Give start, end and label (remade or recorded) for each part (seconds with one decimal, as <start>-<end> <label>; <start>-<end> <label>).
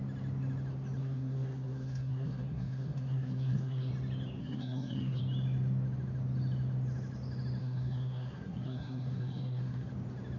0.0-1.0 recorded; 1.0-3.9 remade; 3.9-4.4 recorded; 4.4-5.2 remade; 5.2-7.6 recorded; 7.6-9.9 remade; 9.9-10.4 recorded